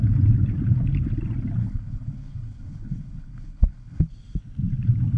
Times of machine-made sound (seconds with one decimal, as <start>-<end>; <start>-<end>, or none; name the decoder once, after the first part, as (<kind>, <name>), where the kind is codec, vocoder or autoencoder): 1.6-4.1 (codec, HILCodec)